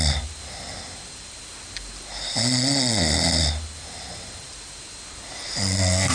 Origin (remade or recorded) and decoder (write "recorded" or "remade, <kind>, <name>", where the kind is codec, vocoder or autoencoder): recorded